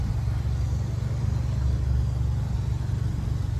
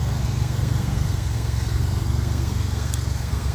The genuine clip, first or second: first